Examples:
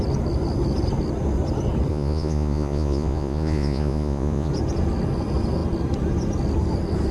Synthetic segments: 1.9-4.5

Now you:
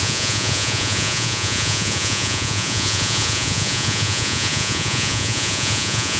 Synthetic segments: 0.0-6.2

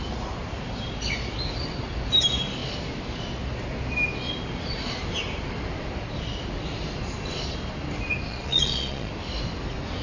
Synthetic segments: 8.3-9.1

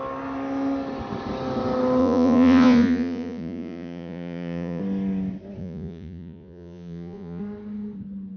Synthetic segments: 2.0-4.8; 5.6-7.4